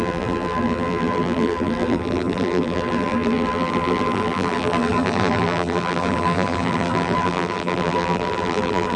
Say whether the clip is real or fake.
fake